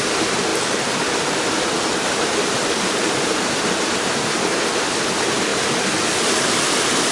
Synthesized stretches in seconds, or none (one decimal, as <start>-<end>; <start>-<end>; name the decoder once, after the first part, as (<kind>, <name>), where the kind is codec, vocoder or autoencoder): 0.5-3.7 (vocoder, BigVGAN v2); 5.5-7.1